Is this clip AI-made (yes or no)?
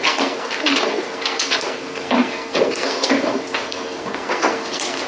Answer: yes